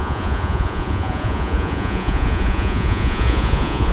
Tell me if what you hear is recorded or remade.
remade